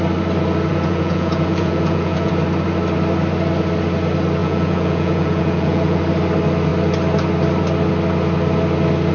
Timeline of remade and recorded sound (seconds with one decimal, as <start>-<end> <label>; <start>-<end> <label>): 0.0-0.7 recorded; 0.7-2.3 remade; 2.3-4.4 recorded; 4.4-6.0 remade; 6.0-9.1 recorded